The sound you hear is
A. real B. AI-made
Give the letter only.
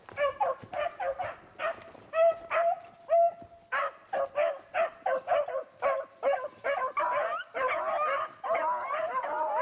A